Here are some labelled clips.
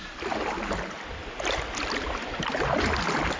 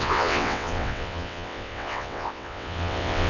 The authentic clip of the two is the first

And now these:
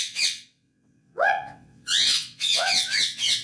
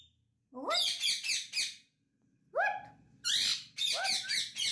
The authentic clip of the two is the second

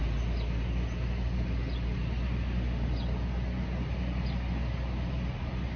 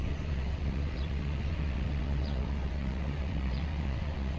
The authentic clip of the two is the first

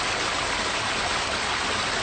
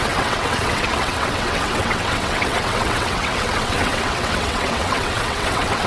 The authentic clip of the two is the first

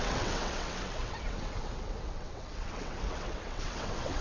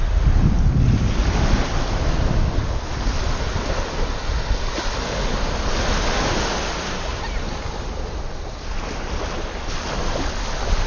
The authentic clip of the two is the second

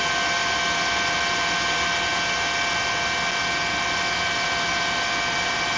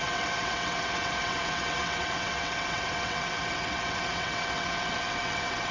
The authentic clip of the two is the first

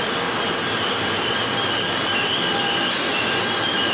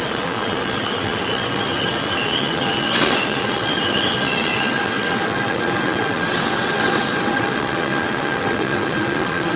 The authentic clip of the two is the first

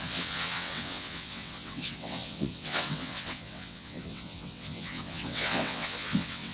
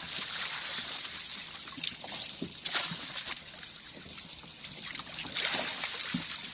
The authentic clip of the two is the second